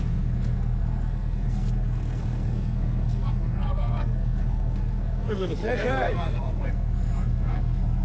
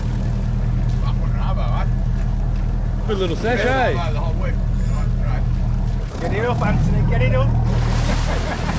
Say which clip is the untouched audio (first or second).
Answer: second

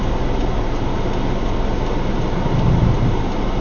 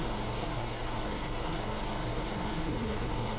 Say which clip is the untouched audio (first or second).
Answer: first